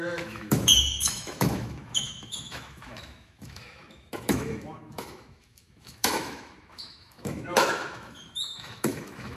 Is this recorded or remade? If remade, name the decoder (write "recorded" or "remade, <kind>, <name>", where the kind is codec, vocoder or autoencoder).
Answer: remade, autoencoder, DAC-VAE